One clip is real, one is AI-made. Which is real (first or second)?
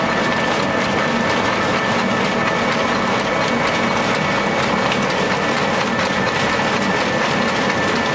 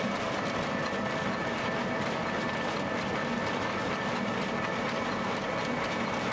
first